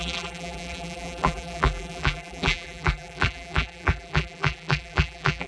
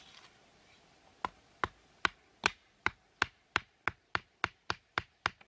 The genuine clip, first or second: second